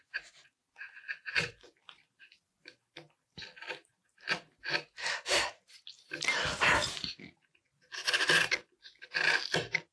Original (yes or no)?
yes